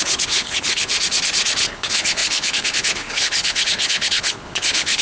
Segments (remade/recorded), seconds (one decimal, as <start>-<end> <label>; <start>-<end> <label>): 0.0-0.9 remade; 0.9-1.6 recorded; 1.6-5.0 remade